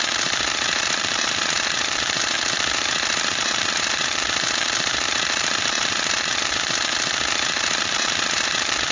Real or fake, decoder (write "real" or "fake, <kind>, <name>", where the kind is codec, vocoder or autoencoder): fake, vocoder, BigVGAN v2